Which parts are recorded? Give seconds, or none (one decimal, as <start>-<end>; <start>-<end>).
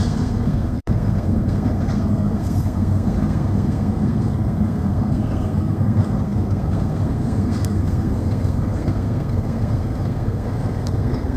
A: none